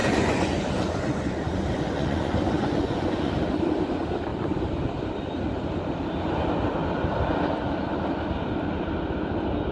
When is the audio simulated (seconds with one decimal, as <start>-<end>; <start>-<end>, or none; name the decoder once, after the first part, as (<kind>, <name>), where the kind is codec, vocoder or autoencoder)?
0.0-3.3 (vocoder, Vocos)